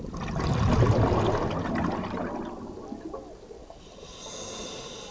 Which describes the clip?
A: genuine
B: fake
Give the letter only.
A